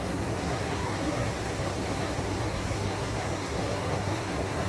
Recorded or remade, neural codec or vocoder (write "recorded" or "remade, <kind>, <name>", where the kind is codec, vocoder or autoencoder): remade, codec, SNAC